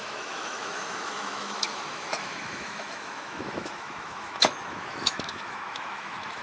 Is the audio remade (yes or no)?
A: yes